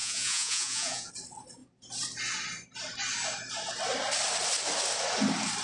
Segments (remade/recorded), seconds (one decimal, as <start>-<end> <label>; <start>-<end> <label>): 0.0-1.1 remade; 1.1-5.6 recorded